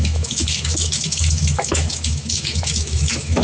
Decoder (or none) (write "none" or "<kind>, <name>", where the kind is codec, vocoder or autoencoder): autoencoder, DAC-VAE